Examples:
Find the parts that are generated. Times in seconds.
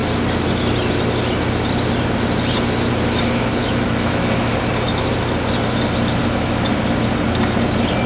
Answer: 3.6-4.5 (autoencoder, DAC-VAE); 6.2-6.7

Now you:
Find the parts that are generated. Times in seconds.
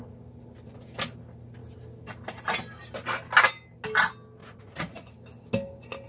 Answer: 4.4-5.1 (vocoder, Vocos)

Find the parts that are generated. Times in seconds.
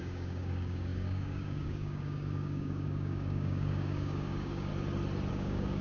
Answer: 0.0-4.7 (codec, DAC); 5.3-5.8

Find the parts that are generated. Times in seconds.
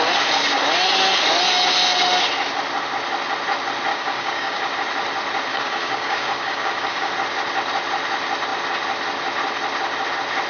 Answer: 3.9-4.7 (codec, DAC); 5.5-7.1